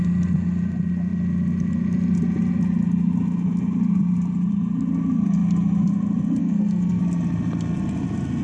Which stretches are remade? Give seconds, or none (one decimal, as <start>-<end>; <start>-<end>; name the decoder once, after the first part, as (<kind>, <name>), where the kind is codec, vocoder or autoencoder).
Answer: 6.4-7.0 (codec, SNAC)